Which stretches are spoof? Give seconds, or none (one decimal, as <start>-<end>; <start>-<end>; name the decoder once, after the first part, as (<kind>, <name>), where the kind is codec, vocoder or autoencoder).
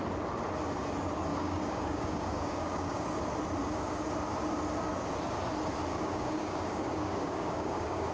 1.3-3.2 (codec, DAC); 3.6-4.1; 5.9-8.1